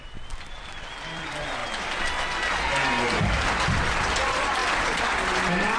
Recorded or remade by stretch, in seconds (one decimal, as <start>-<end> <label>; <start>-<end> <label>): 0.0-1.6 remade; 1.6-3.3 recorded; 3.3-4.6 remade; 4.6-5.8 recorded